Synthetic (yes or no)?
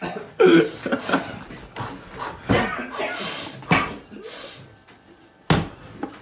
no